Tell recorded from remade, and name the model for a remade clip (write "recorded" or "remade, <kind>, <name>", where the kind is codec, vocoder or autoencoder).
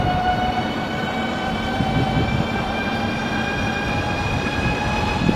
recorded